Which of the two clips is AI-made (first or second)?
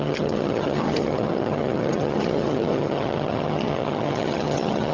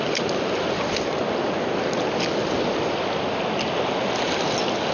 first